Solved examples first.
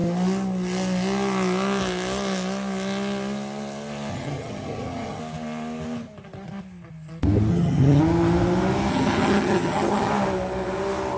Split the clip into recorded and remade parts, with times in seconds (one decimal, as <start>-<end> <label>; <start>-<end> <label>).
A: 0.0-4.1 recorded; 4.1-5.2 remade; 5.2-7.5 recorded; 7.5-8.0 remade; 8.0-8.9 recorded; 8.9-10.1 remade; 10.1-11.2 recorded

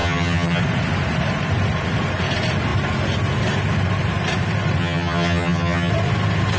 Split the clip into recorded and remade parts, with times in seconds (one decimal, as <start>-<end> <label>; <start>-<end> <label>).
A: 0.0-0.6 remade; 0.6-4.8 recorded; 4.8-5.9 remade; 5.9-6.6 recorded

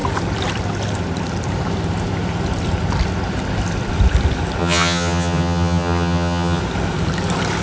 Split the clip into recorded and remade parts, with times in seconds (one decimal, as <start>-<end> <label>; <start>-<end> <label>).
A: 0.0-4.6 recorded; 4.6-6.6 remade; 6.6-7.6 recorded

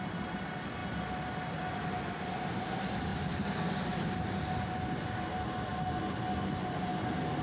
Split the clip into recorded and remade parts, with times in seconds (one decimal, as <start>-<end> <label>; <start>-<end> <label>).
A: 0.0-7.4 recorded